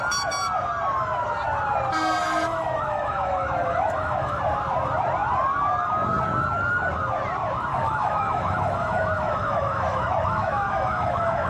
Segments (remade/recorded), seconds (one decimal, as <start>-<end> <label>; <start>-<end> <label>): 0.0-2.2 recorded; 2.2-4.4 remade; 4.4-7.7 recorded; 7.7-11.5 remade